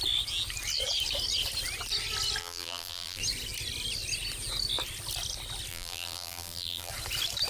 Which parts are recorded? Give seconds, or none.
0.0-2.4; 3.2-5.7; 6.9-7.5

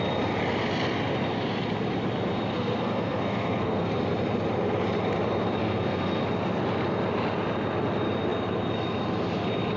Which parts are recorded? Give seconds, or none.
0.0-2.5; 3.9-5.6; 6.2-9.8

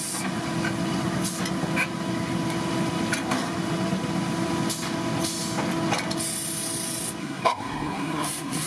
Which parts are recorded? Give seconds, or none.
0.0-7.2

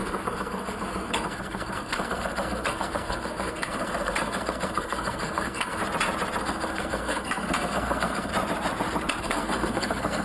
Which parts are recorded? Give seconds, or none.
5.8-6.4; 8.3-9.2

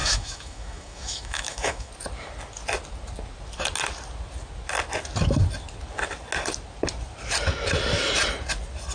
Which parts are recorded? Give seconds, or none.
1.9-8.9